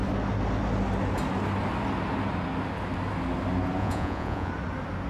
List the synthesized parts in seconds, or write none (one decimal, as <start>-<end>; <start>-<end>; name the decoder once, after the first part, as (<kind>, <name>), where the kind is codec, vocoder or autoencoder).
3.8-4.5 (vocoder, Vocos)